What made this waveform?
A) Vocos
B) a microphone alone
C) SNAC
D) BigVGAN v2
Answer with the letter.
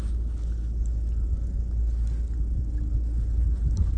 B